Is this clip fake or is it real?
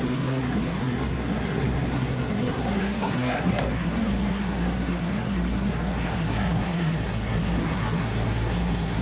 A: fake